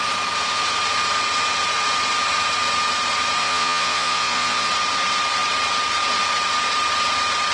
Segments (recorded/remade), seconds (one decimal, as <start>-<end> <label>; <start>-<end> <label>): 0.0-3.4 recorded; 3.4-4.7 remade; 4.7-7.5 recorded